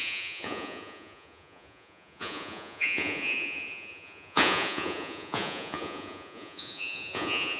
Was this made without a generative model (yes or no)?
no